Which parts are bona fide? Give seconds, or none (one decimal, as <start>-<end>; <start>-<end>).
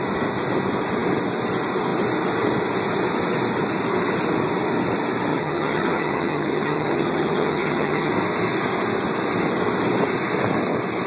0.0-5.3; 8.1-11.1